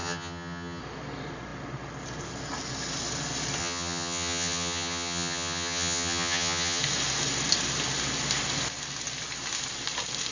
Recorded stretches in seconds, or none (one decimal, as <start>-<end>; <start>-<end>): 0.8-3.6; 6.8-10.3